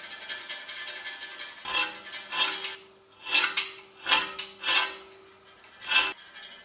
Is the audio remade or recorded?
recorded